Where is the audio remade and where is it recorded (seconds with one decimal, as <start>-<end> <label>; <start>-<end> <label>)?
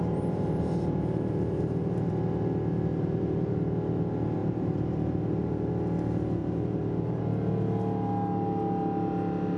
0.0-2.1 remade; 2.1-2.9 recorded; 2.9-3.5 remade; 3.5-4.4 recorded; 4.4-5.7 remade; 5.7-6.4 recorded; 6.4-7.2 remade; 7.2-9.6 recorded